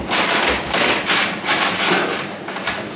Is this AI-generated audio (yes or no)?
no